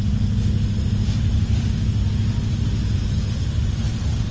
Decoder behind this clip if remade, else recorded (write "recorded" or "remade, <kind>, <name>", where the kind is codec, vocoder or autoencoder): recorded